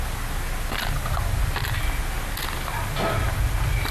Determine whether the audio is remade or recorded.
recorded